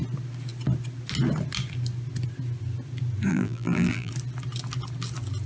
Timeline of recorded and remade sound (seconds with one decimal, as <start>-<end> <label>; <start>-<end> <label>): 0.0-3.3 recorded; 3.3-4.1 remade; 4.1-5.5 recorded